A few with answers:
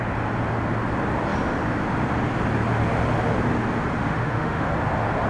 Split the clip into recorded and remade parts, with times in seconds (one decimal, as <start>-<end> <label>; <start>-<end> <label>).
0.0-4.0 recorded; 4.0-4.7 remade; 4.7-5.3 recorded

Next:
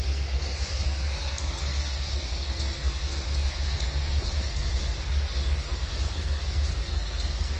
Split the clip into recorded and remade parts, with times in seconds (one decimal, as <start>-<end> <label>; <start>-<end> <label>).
0.0-7.6 remade

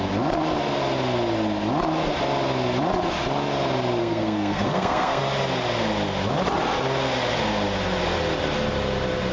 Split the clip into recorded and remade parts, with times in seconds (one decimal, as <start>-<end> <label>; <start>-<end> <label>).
0.0-4.0 recorded; 4.0-5.2 remade; 5.2-9.3 recorded

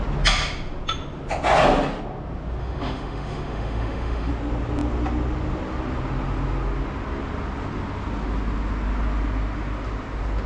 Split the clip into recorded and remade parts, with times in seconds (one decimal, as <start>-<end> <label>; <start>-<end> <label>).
0.0-2.6 recorded; 2.6-4.3 remade; 4.3-10.5 recorded

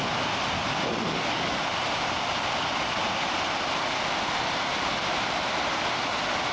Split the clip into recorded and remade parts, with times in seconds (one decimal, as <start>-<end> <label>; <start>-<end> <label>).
0.0-0.9 recorded; 0.9-1.6 remade; 1.6-6.5 recorded

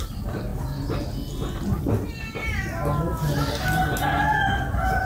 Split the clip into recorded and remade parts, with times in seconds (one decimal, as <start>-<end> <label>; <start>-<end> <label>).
0.0-5.1 recorded

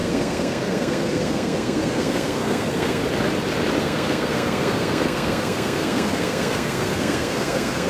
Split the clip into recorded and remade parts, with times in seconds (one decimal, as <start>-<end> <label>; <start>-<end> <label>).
0.0-3.0 remade; 3.0-3.8 recorded; 3.8-7.9 remade